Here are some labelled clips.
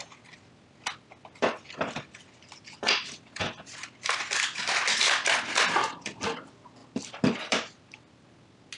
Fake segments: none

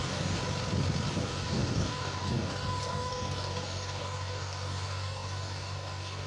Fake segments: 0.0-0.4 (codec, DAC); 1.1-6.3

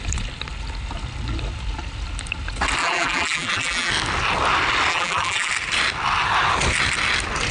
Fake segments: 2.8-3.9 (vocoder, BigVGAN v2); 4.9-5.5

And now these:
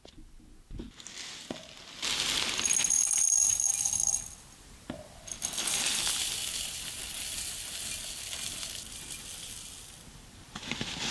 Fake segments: none

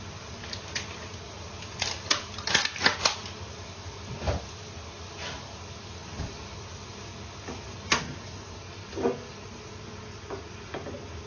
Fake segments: none

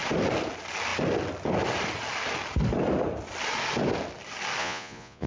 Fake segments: 4.6-5.3 (vocoder, Vocos)

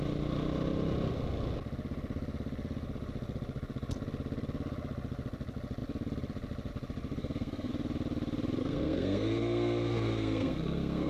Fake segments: 7.2-7.7 (codec, SNAC); 8.6-11.1

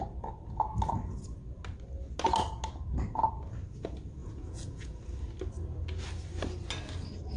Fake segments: 4.2-5.0 (vocoder, Vocos)